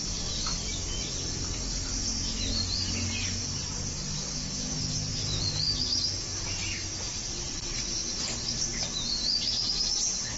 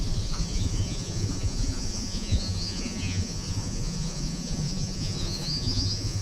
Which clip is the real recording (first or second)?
first